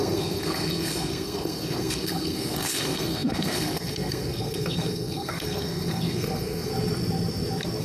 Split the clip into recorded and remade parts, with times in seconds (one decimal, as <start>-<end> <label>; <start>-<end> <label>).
0.0-6.7 remade; 6.7-7.8 recorded